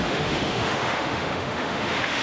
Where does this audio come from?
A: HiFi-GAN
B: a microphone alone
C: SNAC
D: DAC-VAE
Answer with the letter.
D